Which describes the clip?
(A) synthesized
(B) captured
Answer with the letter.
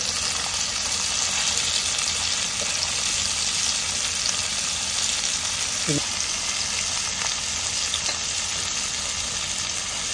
B